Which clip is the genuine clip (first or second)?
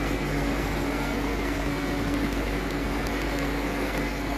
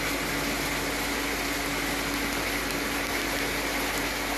second